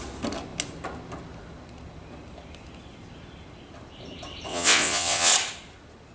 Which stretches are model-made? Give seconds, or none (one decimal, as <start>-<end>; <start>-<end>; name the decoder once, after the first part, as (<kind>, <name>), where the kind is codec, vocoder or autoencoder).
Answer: 4.5-5.3 (vocoder, WaveNeXt)